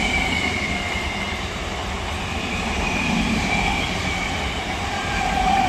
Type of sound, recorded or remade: remade